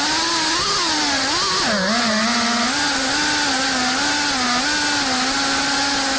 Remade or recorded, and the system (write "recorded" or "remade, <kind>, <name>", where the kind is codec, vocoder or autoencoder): recorded